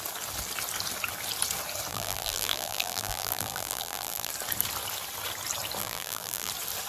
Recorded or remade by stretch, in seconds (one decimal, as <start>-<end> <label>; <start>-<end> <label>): 0.0-1.9 recorded; 1.9-4.3 remade; 4.3-5.8 recorded; 5.8-6.5 remade; 6.5-6.9 recorded